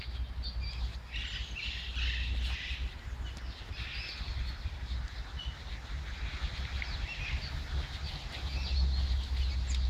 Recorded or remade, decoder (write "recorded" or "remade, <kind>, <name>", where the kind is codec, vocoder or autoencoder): recorded